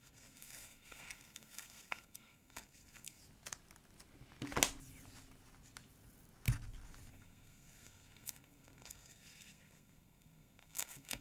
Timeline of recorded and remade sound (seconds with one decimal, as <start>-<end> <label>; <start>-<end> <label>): 0.0-3.2 remade; 3.2-7.1 recorded; 7.1-11.2 remade